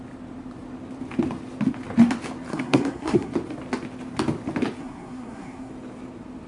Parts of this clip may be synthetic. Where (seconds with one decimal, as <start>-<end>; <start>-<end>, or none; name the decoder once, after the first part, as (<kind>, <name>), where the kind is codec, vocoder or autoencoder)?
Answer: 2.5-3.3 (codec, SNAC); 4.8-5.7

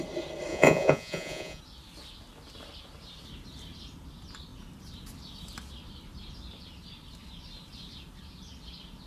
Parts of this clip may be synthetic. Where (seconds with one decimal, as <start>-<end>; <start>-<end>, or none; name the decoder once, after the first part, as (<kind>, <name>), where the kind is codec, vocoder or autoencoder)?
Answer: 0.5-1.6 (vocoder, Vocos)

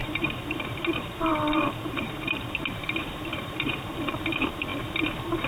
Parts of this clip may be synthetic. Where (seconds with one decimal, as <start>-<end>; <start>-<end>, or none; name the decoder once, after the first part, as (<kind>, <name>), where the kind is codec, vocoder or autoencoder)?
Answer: 0.0-2.5 (vocoder, BigVGAN v2); 3.3-4.2

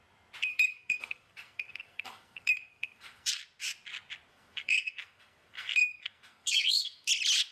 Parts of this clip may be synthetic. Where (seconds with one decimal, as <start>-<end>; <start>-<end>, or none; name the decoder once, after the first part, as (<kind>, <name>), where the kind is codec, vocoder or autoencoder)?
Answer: 0.5-3.3 (codec, SNAC); 4.3-7.1